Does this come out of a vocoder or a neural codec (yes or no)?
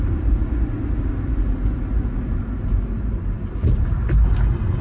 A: no